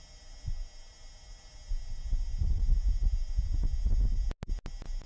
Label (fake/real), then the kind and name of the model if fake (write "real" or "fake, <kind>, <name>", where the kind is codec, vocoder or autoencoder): real